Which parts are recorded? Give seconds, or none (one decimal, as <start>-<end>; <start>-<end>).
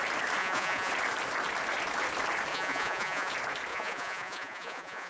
0.0-0.4; 0.9-2.5; 3.3-3.7